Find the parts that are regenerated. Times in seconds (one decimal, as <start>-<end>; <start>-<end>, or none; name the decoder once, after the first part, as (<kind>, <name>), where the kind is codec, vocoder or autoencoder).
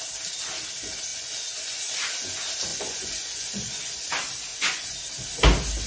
1.1-1.9 (vocoder, Vocos); 2.7-4.1; 4.5-5.0